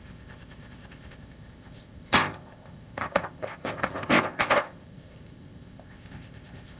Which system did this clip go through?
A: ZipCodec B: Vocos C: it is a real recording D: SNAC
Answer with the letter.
A